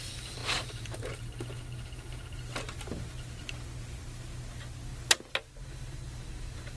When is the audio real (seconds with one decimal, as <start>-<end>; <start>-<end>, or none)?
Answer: 0.0-6.8